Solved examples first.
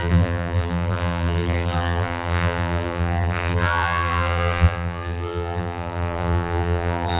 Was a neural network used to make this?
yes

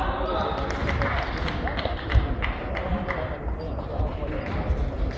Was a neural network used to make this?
no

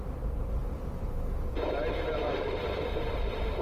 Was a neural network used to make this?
yes